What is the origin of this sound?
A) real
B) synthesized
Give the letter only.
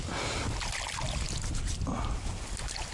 A